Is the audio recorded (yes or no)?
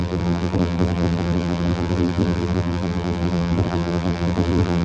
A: no